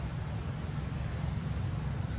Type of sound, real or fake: real